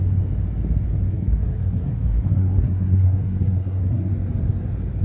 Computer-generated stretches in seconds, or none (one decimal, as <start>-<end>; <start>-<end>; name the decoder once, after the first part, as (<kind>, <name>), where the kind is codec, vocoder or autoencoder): 1.1-4.1 (codec, SNAC)